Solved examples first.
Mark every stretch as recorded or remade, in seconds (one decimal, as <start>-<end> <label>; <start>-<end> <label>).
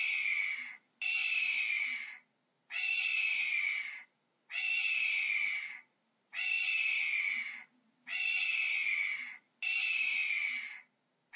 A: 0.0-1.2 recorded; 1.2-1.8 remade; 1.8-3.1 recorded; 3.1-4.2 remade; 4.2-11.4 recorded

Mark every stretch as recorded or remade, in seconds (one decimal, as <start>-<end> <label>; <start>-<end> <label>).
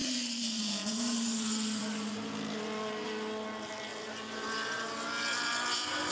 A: 0.0-0.6 remade; 0.6-6.1 recorded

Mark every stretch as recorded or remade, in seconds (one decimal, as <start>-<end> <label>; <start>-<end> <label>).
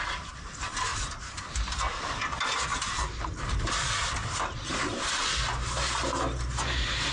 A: 0.0-0.9 recorded; 0.9-1.4 remade; 1.4-2.7 recorded; 2.7-3.7 remade; 3.7-4.2 recorded; 4.2-4.9 remade; 4.9-7.1 recorded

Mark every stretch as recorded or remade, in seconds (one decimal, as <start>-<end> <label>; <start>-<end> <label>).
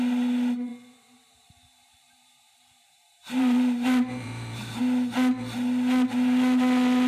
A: 0.0-0.7 recorded; 0.7-4.8 remade; 4.8-7.1 recorded